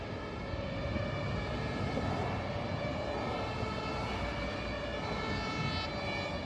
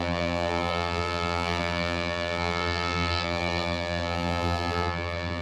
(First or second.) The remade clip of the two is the second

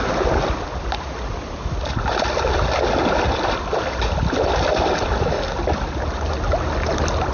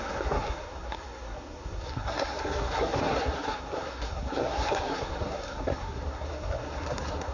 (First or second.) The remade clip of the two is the second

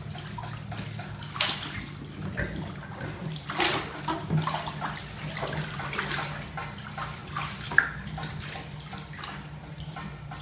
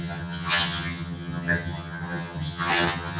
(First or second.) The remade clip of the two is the second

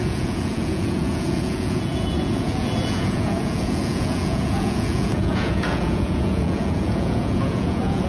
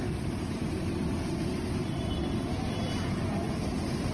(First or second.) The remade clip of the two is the first